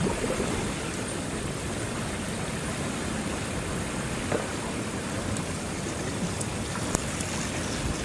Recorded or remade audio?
recorded